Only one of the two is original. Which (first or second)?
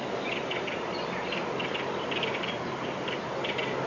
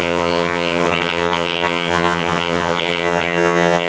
first